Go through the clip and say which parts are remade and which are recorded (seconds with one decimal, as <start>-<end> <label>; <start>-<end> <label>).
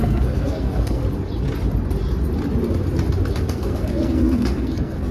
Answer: 0.0-1.0 remade; 1.0-3.3 recorded; 3.3-5.1 remade